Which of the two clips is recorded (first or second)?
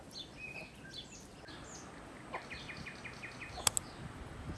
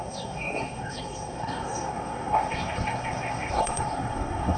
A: first